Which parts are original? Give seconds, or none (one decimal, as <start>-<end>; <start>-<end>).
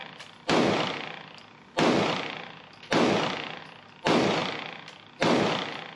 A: 0.0-6.0